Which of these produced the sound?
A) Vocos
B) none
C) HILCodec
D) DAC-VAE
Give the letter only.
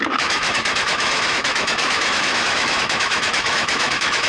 D